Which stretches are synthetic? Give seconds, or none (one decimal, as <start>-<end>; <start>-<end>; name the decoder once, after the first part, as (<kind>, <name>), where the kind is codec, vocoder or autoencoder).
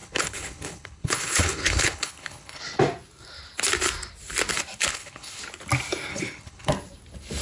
0.0-2.6 (codec, HILCodec); 4.9-5.4; 6.1-6.7